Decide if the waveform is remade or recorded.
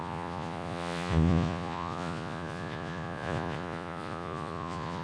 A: remade